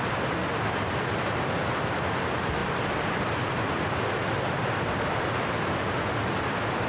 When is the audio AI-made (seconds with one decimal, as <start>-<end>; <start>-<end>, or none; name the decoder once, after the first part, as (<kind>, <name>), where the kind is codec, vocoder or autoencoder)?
none